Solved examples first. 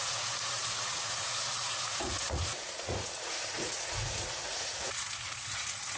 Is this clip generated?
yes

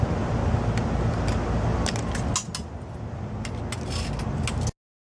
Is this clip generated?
no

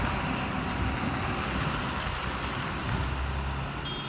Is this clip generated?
no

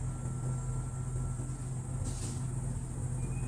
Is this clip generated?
no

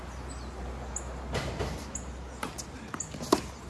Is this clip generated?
no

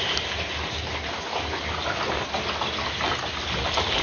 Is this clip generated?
no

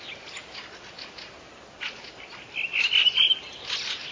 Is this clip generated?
no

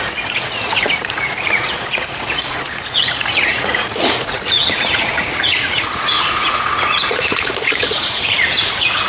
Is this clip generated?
yes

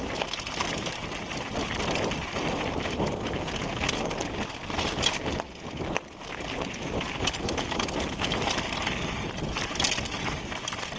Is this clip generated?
no